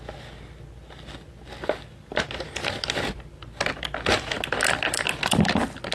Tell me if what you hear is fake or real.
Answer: real